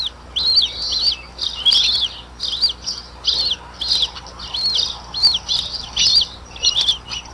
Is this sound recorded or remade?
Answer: recorded